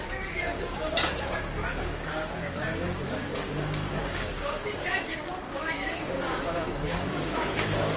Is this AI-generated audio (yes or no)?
yes